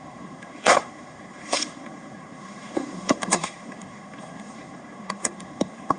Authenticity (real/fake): fake